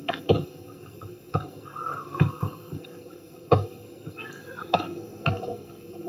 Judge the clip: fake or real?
fake